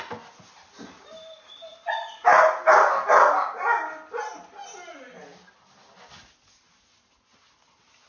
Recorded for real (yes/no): yes